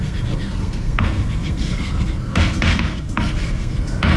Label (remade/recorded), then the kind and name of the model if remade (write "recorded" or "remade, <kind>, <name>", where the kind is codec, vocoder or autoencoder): remade, codec, SNAC